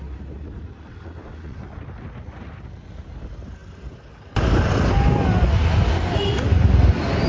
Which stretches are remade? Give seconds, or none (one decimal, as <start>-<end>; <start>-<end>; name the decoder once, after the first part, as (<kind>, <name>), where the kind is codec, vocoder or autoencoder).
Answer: 0.9-1.6 (vocoder, WaveNeXt)